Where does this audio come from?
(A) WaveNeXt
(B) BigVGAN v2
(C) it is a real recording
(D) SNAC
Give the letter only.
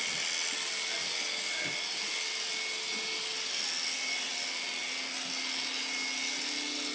C